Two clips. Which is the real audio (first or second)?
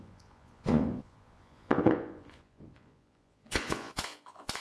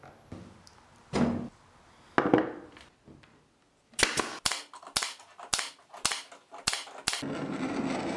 second